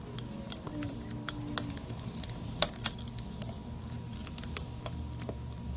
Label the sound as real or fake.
real